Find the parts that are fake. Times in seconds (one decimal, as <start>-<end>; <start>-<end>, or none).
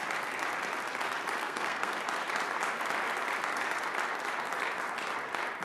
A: 1.4-2.0